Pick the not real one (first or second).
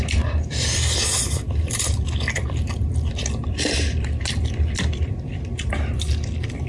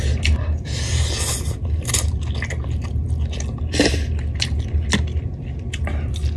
first